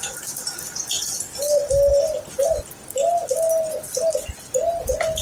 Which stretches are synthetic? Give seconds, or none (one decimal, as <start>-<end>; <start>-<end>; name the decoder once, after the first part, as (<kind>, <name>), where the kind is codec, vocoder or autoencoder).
none